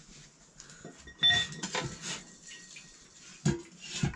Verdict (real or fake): real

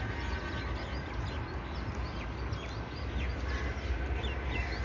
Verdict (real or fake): real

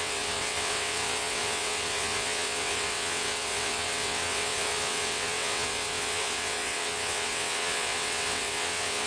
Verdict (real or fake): fake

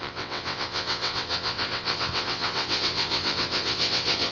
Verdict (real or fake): fake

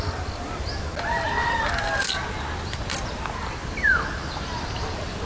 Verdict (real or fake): real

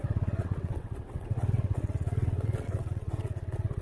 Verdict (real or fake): fake